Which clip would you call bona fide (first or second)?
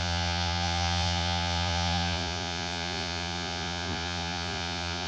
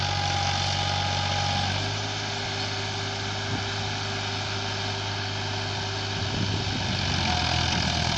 second